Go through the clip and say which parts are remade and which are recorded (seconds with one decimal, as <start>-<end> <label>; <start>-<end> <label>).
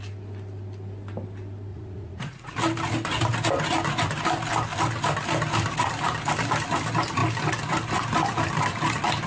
0.0-1.7 recorded; 1.7-2.5 remade; 2.5-9.3 recorded